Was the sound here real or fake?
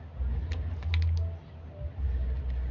real